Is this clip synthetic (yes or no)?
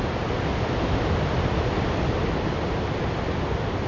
no